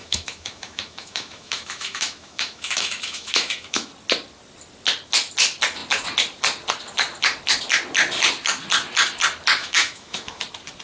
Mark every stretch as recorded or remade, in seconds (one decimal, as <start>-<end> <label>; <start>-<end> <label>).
0.0-3.9 remade; 3.9-9.6 recorded; 9.6-10.4 remade; 10.4-10.8 recorded